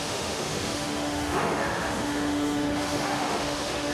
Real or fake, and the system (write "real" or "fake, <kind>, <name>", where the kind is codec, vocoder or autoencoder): fake, autoencoder, DAC-VAE